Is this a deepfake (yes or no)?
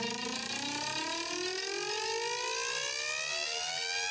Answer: no